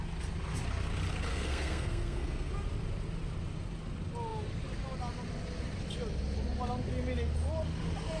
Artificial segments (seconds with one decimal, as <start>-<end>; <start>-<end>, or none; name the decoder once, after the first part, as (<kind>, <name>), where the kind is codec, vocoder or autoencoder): 1.3-2.5 (codec, SNAC)